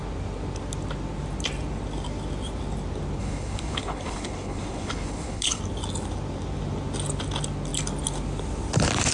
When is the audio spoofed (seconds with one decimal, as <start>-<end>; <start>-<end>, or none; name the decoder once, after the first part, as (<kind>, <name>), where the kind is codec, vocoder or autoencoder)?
3.2-5.6 (codec, HILCodec)